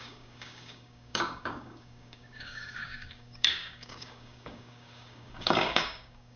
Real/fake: fake